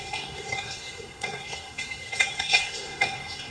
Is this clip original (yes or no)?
no